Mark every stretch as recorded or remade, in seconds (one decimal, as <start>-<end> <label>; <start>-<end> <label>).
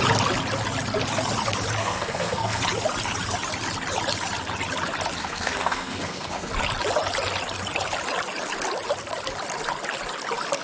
0.0-1.8 recorded; 1.8-2.6 remade; 2.6-5.2 recorded; 5.2-6.5 remade; 6.5-10.6 recorded